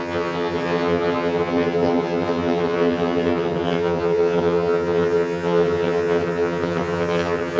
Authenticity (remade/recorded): remade